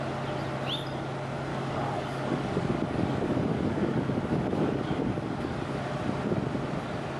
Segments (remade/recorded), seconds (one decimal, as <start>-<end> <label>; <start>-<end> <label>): 0.0-1.5 recorded; 1.5-5.8 remade; 5.8-7.2 recorded